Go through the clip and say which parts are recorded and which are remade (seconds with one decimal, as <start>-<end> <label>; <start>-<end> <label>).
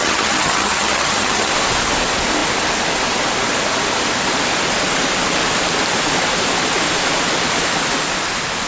0.0-1.5 remade; 1.5-8.7 recorded